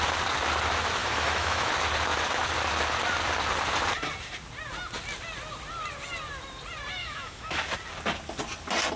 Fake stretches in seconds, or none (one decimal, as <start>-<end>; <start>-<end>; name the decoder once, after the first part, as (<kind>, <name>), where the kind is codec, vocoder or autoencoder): 1.0-1.7 (autoencoder, DAC-VAE); 7.0-7.6